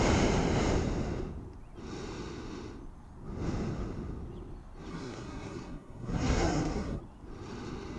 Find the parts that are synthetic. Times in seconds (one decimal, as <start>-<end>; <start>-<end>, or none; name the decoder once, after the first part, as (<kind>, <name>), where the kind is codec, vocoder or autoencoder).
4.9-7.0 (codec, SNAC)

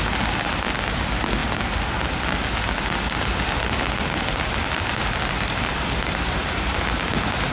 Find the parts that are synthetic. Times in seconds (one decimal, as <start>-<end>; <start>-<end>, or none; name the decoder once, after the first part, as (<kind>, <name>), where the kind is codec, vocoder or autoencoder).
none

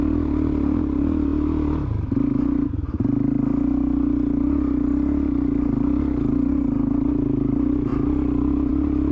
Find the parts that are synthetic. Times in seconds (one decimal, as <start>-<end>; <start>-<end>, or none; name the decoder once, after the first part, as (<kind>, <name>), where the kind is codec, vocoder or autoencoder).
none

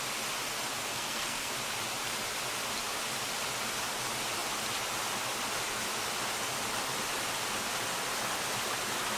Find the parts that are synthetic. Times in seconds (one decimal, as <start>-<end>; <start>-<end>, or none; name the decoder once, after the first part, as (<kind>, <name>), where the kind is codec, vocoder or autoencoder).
0.9-1.5 (codec, SNAC)

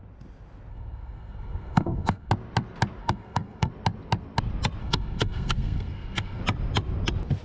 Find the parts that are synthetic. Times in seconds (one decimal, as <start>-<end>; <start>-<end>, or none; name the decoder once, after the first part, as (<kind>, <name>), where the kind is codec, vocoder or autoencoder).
0.7-2.3 (codec, SNAC); 3.0-3.7; 4.8-6.4

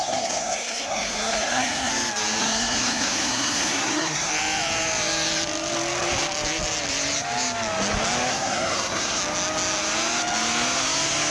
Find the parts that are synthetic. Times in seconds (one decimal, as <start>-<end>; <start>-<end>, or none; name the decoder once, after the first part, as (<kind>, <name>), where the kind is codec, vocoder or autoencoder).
0.0-1.9 (codec, SNAC); 2.4-4.3; 8.3-9.2

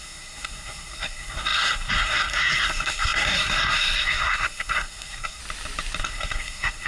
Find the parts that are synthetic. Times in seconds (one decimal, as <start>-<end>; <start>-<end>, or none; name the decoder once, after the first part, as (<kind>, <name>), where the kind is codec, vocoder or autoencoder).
0.0-5.4 (codec, SNAC); 6.0-6.9